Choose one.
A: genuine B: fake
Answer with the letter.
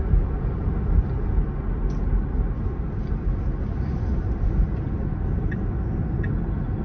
A